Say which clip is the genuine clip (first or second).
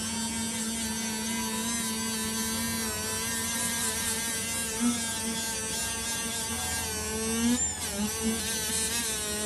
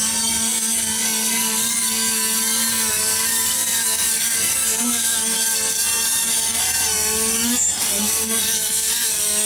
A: first